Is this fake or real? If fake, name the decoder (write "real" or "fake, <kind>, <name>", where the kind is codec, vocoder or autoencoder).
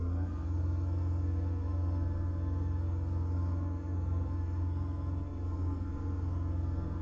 fake, codec, SNAC